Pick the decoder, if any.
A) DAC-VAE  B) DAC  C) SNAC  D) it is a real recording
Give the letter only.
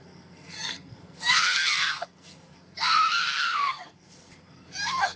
C